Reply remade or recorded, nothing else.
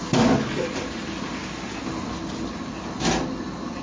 recorded